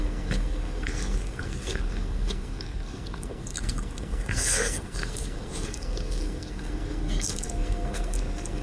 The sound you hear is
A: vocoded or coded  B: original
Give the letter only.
A